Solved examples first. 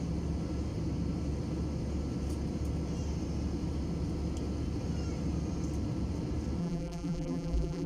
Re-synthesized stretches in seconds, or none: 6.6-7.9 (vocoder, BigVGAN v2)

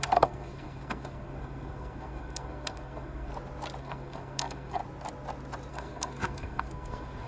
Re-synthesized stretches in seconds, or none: 0.0-3.3 (codec, SNAC); 3.8-4.8; 5.7-7.3

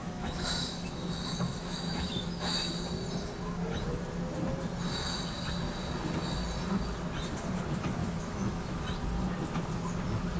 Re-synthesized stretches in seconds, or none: 0.0-2.7 (autoencoder, DAC-VAE); 8.0-8.8